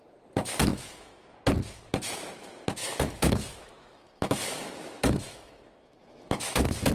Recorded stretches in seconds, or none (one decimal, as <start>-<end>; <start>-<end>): 0.0-0.7; 1.3-2.8

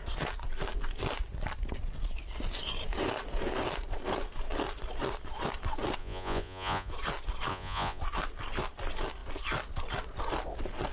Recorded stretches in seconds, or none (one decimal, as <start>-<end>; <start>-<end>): 0.0-6.0; 6.9-7.5; 8.0-10.9

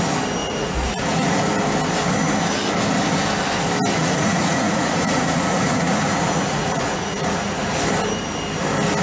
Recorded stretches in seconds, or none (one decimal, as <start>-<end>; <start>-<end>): 0.0-0.4; 1.4-4.0; 7.8-9.0

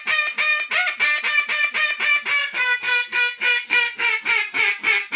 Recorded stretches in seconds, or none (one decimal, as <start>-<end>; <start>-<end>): 0.0-2.4; 4.2-5.2

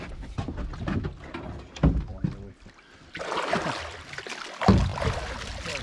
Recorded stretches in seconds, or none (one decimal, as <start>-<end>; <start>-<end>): 0.0-4.9

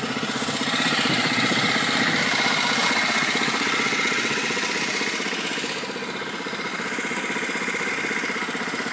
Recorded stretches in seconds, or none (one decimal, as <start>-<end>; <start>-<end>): 0.0-1.2; 1.7-2.8; 4.7-8.9

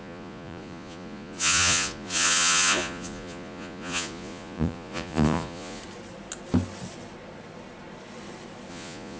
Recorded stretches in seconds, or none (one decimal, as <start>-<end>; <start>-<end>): 5.8-8.7